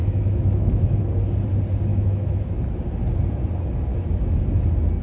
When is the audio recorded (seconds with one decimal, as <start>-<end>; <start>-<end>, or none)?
1.0-1.9; 2.6-3.9; 4.4-5.0